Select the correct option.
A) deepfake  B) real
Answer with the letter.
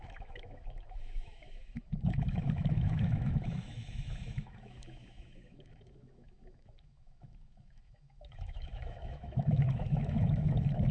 A